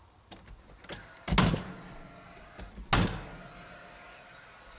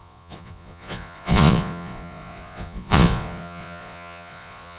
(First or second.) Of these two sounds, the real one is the first